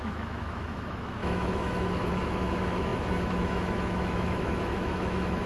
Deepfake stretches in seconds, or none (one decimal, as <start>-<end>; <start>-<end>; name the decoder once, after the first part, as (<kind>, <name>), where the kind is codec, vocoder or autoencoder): 0.0-5.5 (autoencoder, DAC-VAE)